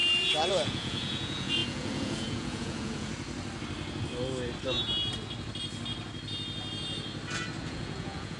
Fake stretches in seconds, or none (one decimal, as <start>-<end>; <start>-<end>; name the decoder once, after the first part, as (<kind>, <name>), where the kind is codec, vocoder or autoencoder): 0.5-3.1 (vocoder, Vocos); 7.6-8.4